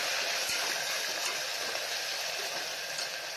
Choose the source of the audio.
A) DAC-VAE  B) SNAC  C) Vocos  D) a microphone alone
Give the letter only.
D